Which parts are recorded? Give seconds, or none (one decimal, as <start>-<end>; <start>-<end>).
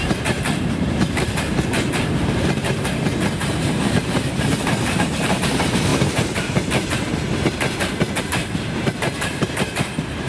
none